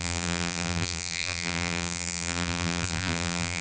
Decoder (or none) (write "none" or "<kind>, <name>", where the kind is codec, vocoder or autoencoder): vocoder, BigVGAN v2